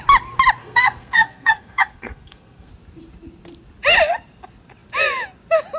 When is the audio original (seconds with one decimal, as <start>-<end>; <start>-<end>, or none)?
0.0-0.6; 2.7-5.8

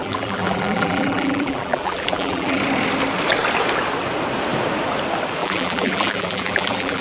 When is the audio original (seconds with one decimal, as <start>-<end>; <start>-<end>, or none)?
2.6-5.4

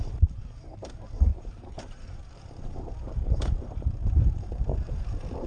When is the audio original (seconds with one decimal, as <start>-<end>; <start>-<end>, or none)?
none

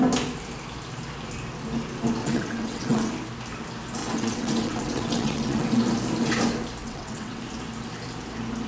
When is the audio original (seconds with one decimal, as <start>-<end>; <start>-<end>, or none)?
0.0-2.2; 3.1-4.0; 5.8-6.8; 7.4-8.7